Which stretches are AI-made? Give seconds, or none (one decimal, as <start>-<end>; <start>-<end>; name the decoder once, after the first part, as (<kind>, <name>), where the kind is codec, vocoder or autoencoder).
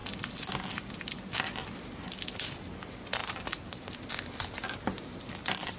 3.2-4.1 (vocoder, BigVGAN v2)